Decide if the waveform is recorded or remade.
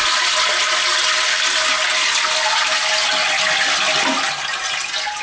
recorded